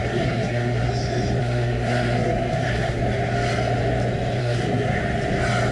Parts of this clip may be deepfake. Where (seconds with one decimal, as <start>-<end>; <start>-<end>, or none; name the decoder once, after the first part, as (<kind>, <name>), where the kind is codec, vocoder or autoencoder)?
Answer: 0.0-0.9 (codec, SNAC); 1.4-3.0; 4.4-5.0